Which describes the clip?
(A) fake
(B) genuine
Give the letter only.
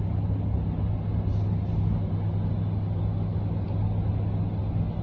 B